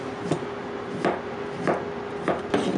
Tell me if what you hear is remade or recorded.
recorded